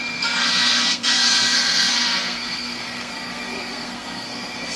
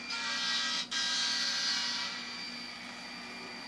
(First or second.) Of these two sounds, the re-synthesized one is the first